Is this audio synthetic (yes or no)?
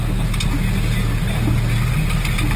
no